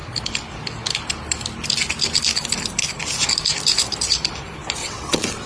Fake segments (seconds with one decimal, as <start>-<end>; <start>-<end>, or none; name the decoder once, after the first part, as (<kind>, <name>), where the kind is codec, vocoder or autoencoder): 4.8-5.5 (vocoder, WaveNeXt)